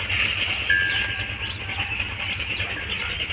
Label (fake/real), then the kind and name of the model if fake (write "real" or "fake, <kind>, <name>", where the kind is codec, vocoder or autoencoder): real